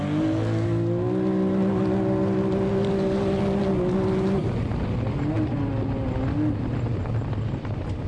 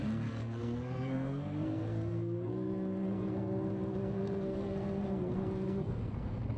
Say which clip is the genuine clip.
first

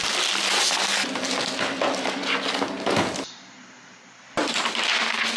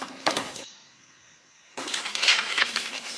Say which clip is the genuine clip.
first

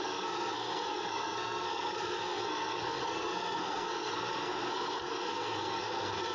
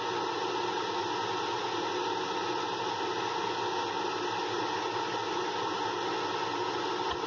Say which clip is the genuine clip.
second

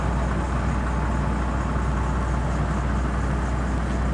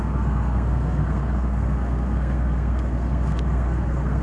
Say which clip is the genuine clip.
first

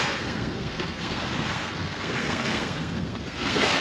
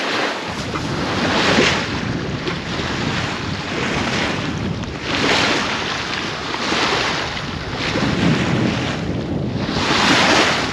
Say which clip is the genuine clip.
second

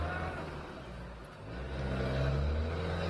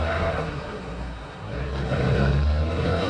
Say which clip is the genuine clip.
first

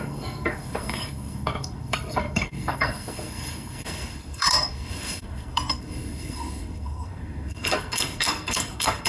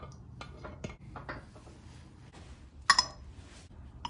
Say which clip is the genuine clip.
second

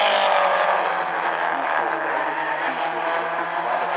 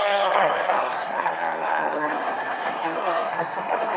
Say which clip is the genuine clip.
first